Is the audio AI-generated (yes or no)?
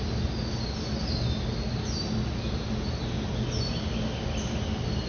no